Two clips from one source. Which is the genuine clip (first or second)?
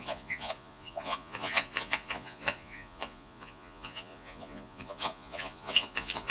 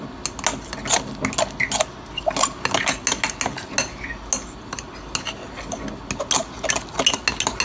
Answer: second